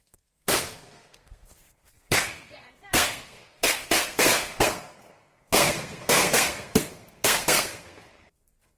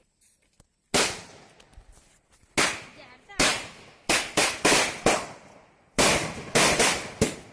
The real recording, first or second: second